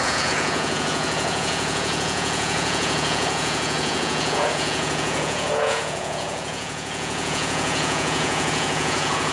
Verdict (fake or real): fake